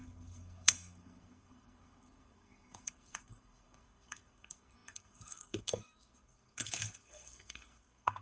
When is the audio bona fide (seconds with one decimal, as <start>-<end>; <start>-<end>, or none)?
none